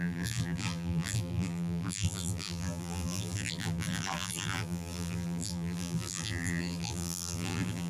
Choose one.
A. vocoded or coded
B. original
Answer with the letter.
A